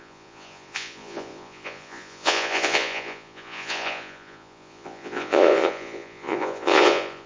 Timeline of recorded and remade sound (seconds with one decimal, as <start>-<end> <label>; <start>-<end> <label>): 0.0-7.3 remade